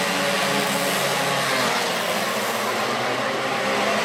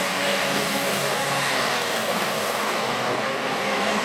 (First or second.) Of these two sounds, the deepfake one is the second